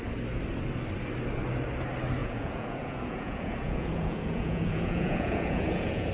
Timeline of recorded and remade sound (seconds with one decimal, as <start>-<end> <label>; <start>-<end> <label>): 0.0-2.2 recorded; 2.2-6.1 remade